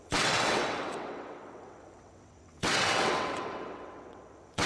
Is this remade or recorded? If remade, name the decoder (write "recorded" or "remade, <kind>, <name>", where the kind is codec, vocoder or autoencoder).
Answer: remade, vocoder, WaveNeXt